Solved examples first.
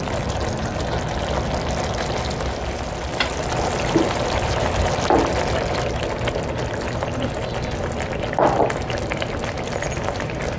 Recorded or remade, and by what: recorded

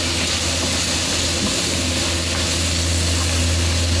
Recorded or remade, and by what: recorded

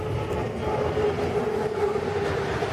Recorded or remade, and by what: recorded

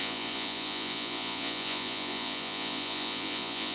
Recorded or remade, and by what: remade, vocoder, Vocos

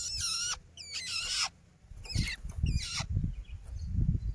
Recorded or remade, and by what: recorded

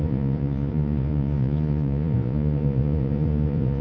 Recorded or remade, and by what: remade, vocoder, Vocos